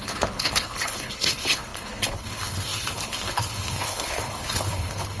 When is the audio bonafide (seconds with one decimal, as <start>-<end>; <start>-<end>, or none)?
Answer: none